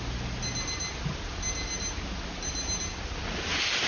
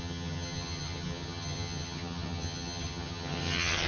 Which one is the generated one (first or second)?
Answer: second